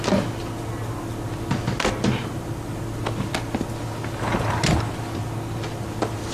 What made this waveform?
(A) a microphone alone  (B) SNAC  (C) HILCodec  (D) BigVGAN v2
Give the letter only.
A